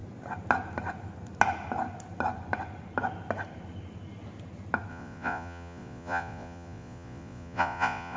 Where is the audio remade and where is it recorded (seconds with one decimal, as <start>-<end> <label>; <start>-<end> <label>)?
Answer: 0.0-4.9 recorded; 4.9-8.2 remade